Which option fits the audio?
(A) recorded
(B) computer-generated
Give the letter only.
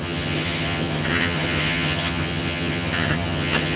B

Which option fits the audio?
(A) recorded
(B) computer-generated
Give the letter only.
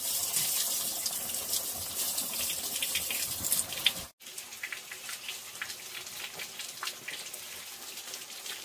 A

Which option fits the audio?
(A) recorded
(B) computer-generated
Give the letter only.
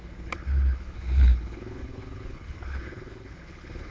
B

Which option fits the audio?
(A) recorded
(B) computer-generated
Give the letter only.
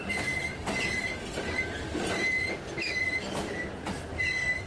A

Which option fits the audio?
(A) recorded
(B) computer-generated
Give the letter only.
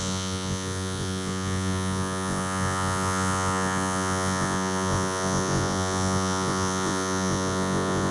B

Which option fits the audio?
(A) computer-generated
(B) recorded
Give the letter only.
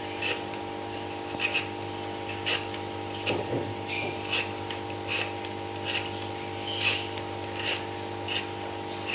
A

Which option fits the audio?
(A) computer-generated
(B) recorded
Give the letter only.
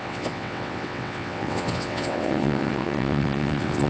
A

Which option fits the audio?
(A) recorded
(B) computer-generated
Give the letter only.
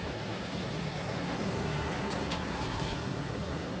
B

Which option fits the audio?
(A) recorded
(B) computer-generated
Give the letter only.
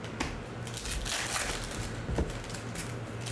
A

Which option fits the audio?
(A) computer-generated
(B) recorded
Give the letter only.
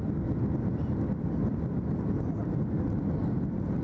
B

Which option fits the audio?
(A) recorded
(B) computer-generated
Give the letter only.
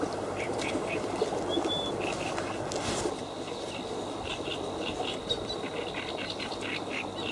B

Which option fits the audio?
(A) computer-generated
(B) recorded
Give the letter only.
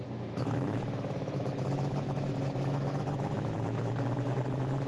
A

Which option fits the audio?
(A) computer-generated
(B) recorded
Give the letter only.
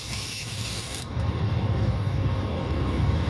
A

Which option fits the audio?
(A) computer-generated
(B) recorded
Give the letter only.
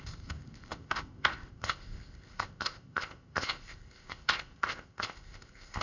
A